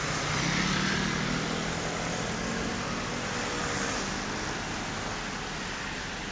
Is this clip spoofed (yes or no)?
no